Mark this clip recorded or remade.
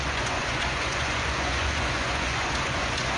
remade